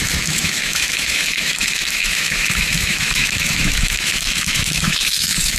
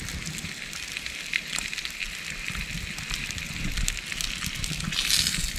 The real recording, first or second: second